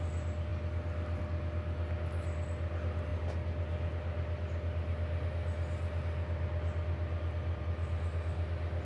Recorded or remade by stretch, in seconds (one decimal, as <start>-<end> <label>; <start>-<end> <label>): 0.0-8.8 recorded